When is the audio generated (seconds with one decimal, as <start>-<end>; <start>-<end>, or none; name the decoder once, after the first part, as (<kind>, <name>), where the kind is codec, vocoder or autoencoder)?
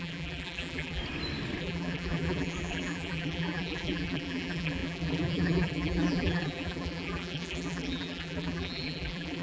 0.0-1.0 (vocoder, BigVGAN v2); 1.6-9.4